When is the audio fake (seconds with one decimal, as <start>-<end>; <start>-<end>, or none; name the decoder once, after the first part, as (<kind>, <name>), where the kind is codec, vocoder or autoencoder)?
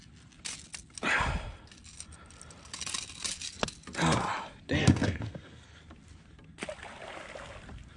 4.8-5.7 (codec, SNAC)